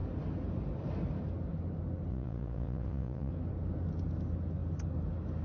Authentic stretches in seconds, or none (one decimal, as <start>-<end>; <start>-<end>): 0.0-2.1; 3.3-5.4